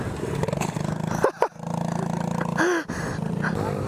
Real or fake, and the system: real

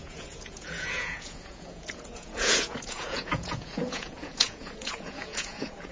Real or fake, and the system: fake, vocoder, Vocos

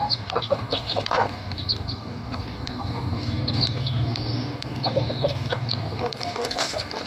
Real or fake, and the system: fake, codec, DAC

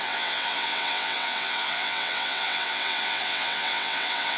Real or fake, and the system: fake, vocoder, WaveNeXt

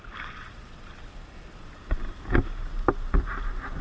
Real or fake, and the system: real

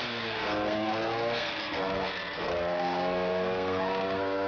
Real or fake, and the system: fake, codec, SNAC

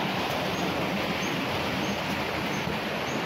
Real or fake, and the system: real